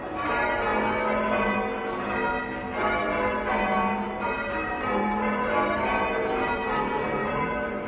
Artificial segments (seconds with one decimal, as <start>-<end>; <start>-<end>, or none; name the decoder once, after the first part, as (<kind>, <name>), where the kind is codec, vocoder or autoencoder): 0.0-0.7 (vocoder, BigVGAN v2); 2.8-7.9

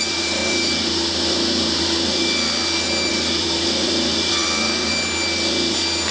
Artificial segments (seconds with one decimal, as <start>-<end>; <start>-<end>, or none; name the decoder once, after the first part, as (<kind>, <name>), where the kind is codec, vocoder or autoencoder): 0.0-0.4 (vocoder, BigVGAN v2); 3.1-4.9

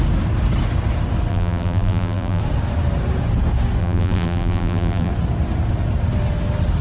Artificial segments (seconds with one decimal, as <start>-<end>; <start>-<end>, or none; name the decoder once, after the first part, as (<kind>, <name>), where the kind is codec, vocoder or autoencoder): 1.3-2.4 (vocoder, BigVGAN v2); 3.8-5.1

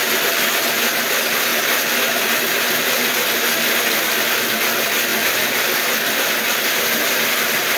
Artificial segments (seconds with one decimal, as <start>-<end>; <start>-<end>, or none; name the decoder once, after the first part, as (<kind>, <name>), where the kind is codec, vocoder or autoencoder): none

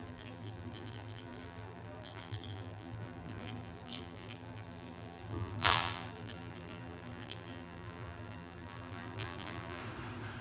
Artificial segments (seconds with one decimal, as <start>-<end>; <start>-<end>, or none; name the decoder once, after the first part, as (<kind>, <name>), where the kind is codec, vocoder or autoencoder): 0.0-9.8 (vocoder, BigVGAN v2)

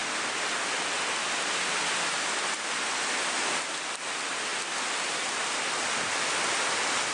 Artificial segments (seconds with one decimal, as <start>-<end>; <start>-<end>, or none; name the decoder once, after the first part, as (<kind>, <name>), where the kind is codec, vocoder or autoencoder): none